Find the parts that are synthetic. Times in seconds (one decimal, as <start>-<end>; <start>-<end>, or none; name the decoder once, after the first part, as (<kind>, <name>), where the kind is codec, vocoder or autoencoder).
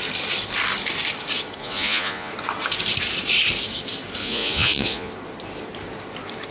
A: 1.6-2.3 (vocoder, Vocos); 4.2-5.1